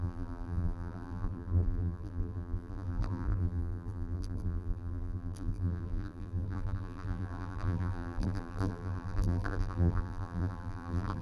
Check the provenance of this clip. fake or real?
fake